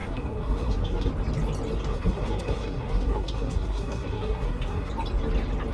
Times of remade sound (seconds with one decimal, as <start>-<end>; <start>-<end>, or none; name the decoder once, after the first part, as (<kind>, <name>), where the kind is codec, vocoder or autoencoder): 0.0-1.1 (codec, SNAC); 1.9-4.9